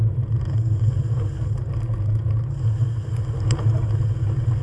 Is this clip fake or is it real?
real